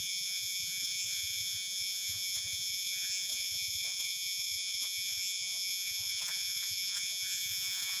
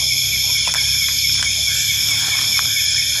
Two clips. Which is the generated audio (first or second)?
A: first